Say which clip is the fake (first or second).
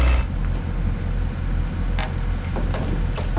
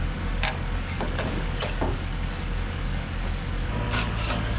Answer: second